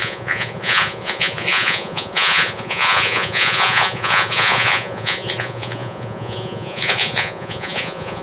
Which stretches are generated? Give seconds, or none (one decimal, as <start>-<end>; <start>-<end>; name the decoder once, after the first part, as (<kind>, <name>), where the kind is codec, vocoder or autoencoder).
0.0-8.2 (vocoder, Vocos)